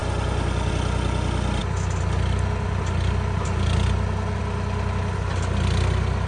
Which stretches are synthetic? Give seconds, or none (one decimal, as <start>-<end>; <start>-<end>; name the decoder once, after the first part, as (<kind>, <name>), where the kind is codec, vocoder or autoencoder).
none